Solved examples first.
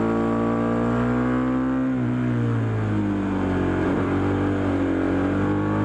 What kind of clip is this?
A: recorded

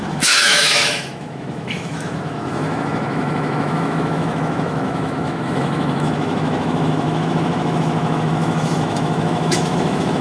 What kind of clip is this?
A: remade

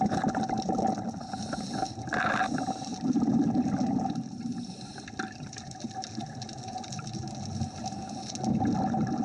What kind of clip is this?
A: recorded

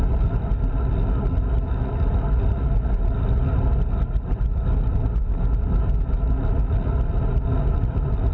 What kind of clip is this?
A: recorded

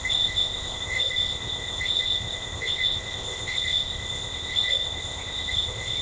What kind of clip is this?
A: remade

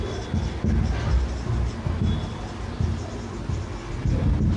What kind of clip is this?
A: recorded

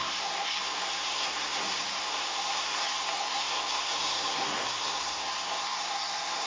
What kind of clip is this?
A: remade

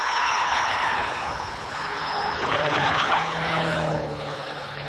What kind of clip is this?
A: remade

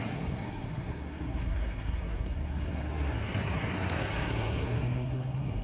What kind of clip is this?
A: remade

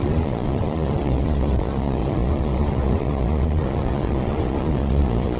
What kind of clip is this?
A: remade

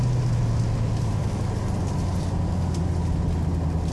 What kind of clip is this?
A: recorded